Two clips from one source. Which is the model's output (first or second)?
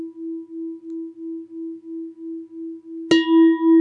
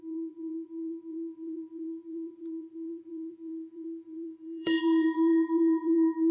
second